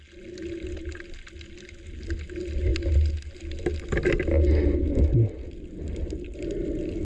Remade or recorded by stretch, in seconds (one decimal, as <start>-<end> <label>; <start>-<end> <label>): 0.0-7.0 recorded